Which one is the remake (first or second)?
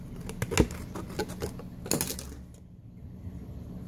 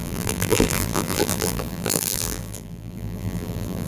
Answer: second